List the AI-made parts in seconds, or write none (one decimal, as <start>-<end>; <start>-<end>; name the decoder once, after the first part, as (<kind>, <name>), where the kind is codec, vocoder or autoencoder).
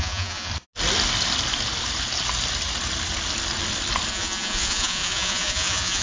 0.0-0.5 (vocoder, Vocos); 4.1-6.0